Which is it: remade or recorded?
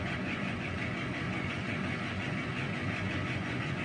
remade